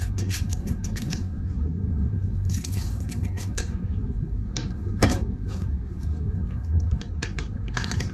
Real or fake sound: fake